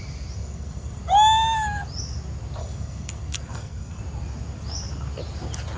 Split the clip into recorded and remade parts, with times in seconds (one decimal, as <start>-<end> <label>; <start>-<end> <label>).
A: 0.0-0.4 recorded; 0.4-1.0 remade; 1.0-2.6 recorded; 2.6-4.0 remade; 4.0-5.8 recorded